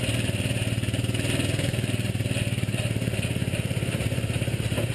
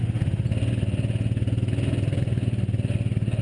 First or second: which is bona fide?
second